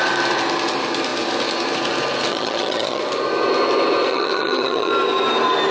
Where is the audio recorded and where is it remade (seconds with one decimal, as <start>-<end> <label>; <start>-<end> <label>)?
0.0-2.3 recorded; 2.3-3.0 remade; 3.0-4.1 recorded; 4.1-4.9 remade; 4.9-5.7 recorded

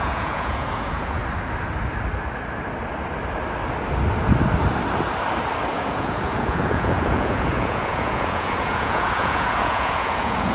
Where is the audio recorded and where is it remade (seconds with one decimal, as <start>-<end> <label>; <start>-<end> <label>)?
0.0-1.2 remade; 1.2-5.7 recorded; 5.7-10.5 remade

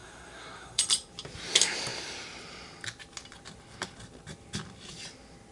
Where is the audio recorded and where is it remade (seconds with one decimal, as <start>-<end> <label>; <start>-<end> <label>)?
0.0-0.8 remade; 0.8-5.5 recorded

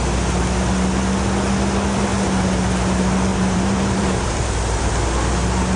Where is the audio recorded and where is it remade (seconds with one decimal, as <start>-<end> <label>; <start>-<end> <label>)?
0.0-3.3 recorded; 3.3-4.9 remade; 4.9-5.8 recorded

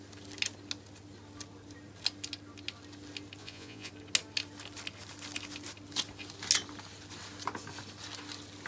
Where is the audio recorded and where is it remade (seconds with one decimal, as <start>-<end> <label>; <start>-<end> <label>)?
0.0-3.4 recorded; 3.4-3.9 remade; 3.9-8.7 recorded

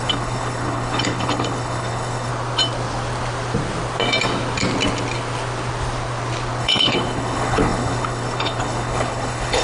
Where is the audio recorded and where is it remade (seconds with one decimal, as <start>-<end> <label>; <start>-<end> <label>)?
0.0-2.3 remade; 2.3-6.6 recorded; 6.6-9.6 remade

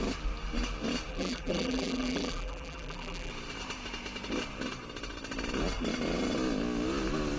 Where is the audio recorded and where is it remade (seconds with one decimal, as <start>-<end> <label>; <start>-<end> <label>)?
0.0-1.1 recorded; 1.1-3.3 remade; 3.3-7.4 recorded